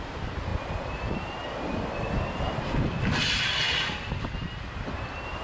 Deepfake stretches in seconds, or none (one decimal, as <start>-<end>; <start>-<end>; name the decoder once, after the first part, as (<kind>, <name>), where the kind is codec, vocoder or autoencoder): none